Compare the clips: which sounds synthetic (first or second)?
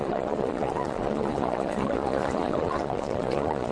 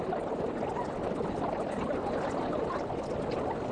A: first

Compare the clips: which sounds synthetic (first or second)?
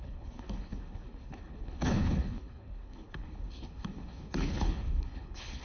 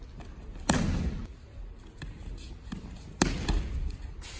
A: first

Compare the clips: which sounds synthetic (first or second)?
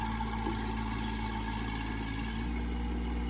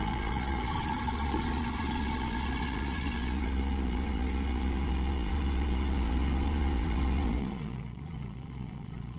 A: second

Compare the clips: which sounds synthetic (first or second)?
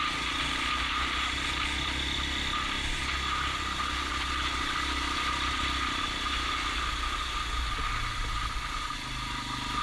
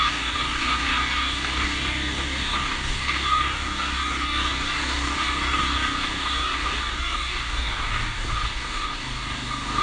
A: second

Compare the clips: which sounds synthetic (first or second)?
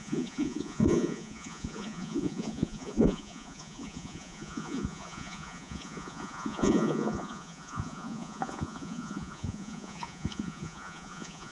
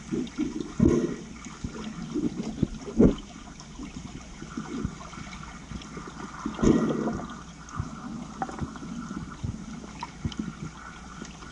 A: first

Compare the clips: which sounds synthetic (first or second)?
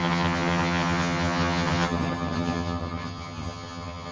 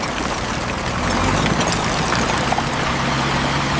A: first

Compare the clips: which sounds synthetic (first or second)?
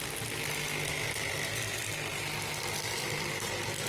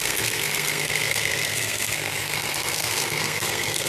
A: second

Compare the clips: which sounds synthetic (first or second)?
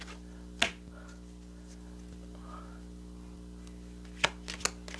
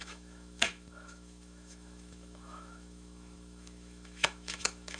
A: second